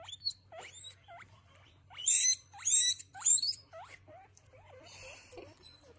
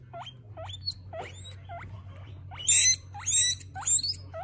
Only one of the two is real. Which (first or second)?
second